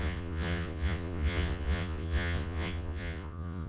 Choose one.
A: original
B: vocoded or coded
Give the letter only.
B